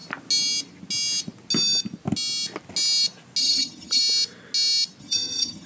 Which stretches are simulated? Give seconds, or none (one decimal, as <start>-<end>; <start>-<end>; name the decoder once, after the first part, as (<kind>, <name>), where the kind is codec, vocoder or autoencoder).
3.4-4.0 (vocoder, HiFi-GAN); 5.0-5.7